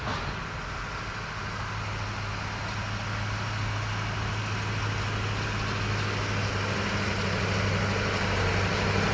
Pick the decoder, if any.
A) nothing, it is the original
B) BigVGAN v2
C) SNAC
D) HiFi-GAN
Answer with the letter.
A